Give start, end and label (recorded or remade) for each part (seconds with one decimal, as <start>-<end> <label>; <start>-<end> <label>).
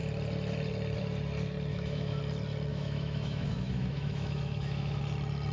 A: 0.0-1.7 recorded; 1.7-2.2 remade; 2.2-2.7 recorded; 2.7-5.0 remade; 5.0-5.5 recorded